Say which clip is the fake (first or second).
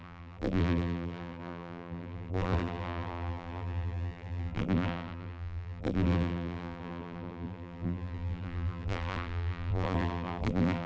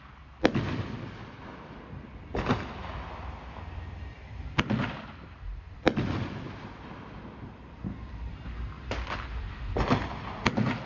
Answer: first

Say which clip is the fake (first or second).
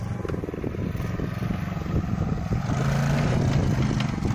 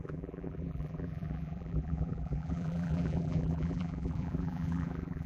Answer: second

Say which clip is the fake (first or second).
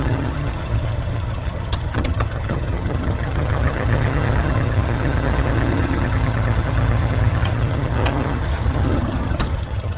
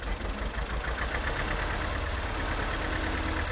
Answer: first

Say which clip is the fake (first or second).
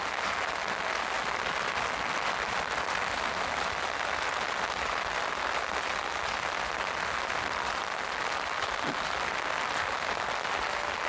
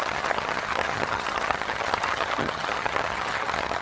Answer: second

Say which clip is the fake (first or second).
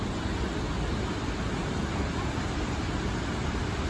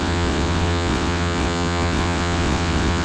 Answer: second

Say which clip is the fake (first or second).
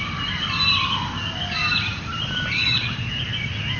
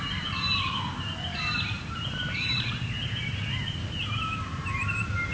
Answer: second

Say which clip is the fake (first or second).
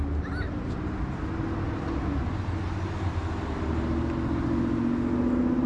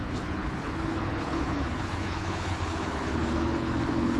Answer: second